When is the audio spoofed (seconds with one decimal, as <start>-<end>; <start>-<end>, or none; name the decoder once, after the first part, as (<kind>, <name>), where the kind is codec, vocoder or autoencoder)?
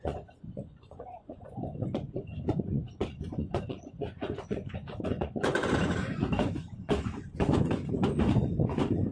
0.0-9.1 (vocoder, Vocos)